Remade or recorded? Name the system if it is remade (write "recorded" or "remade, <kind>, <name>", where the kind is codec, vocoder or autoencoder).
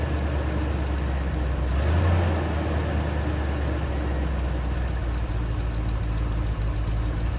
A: recorded